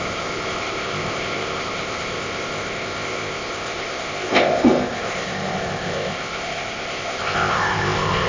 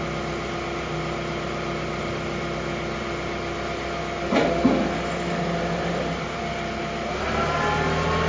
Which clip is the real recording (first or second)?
second